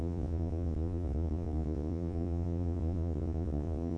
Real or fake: fake